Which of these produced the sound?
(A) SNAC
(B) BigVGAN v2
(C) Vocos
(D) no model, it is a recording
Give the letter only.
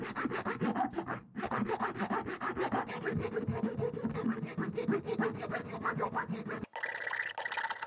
D